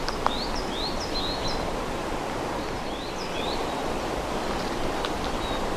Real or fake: real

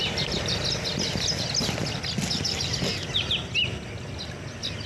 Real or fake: real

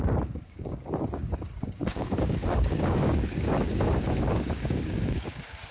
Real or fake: fake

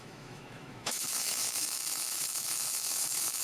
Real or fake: fake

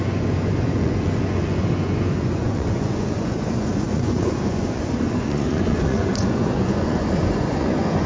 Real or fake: fake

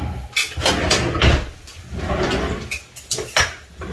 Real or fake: real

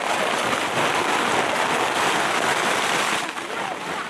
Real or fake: real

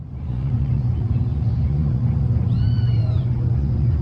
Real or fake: fake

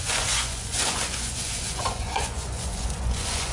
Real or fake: fake